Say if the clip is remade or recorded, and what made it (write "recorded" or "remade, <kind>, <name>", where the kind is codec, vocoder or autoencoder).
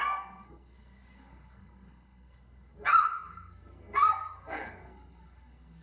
remade, codec, SNAC